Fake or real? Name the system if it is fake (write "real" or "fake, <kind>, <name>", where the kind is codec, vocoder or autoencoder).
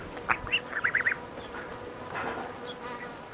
real